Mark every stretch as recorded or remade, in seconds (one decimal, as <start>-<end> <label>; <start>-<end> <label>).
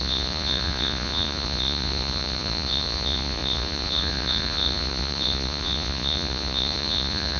0.0-7.4 remade